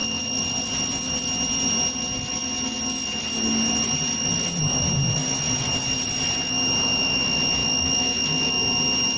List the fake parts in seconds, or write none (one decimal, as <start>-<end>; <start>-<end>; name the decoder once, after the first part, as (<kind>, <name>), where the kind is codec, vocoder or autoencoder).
none